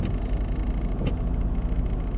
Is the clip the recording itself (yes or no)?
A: yes